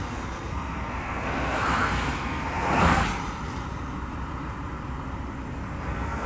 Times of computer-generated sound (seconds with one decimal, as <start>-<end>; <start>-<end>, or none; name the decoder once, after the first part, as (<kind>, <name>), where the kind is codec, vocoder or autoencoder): 0.0-3.0 (codec, SNAC); 5.8-6.3